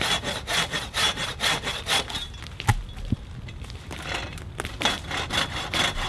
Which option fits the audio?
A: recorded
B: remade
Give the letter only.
A